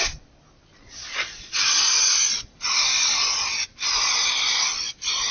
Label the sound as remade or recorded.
recorded